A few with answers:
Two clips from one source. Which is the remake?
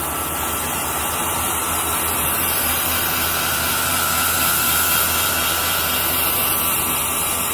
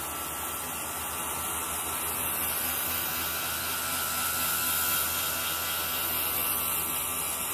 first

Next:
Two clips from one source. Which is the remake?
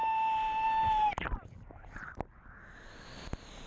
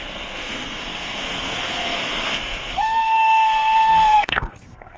second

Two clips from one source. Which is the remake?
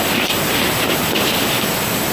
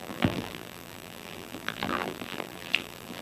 second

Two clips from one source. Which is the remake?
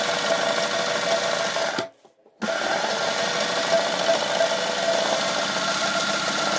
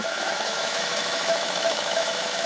second